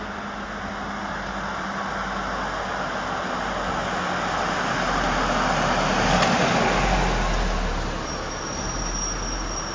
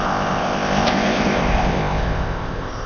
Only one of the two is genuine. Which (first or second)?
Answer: first